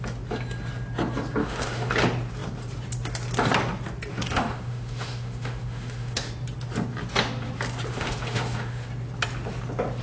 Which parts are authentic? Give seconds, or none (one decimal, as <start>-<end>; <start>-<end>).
0.0-1.4; 1.9-4.1; 6.3-7.9; 8.9-10.0